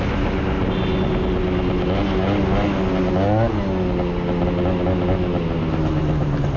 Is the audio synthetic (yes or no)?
no